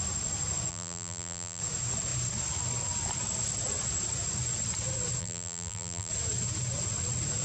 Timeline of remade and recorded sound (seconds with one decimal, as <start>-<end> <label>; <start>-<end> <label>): 0.0-0.7 recorded; 0.7-1.6 remade; 1.6-5.2 recorded; 5.2-6.1 remade; 6.1-7.4 recorded